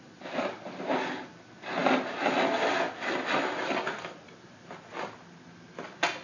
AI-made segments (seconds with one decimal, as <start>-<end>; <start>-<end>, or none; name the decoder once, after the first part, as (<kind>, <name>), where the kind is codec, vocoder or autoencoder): none